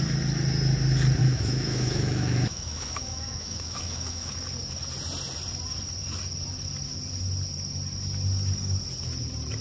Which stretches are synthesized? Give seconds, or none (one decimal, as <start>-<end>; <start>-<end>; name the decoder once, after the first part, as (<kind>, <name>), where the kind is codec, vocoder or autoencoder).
1.2-4.3 (autoencoder, DAC-VAE)